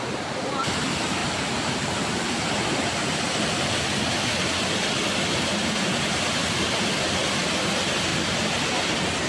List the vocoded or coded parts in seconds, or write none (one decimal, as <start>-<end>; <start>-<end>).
1.2-2.4; 6.4-6.9; 8.1-8.6

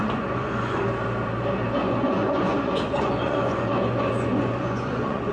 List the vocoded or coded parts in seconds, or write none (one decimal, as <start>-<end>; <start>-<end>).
0.0-0.8; 1.8-5.3

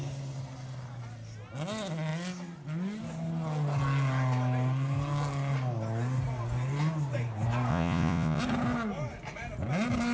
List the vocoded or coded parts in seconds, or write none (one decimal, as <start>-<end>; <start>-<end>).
7.7-8.4